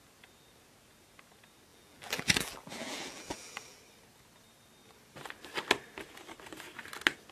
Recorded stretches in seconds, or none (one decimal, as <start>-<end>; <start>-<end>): 0.0-1.7; 3.8-7.3